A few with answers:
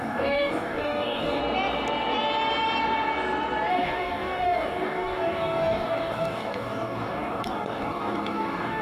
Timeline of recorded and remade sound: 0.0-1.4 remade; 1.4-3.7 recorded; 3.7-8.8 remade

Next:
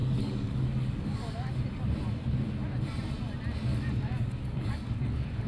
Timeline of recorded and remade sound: 0.0-1.5 remade; 1.5-3.7 recorded; 3.7-5.5 remade

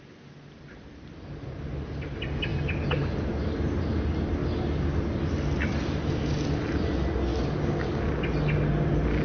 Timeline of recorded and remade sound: 0.0-7.3 recorded; 7.3-8.0 remade; 8.0-9.2 recorded